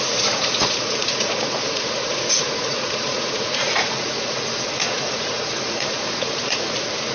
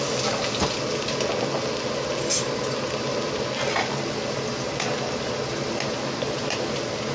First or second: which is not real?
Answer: first